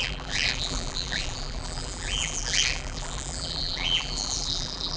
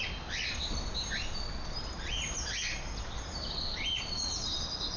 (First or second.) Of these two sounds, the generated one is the first